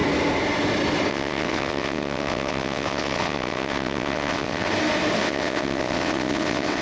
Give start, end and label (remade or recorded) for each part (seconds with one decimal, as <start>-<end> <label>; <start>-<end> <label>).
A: 0.0-1.1 recorded; 1.1-4.7 remade; 4.7-5.2 recorded; 5.2-6.8 remade